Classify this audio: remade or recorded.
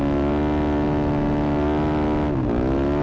recorded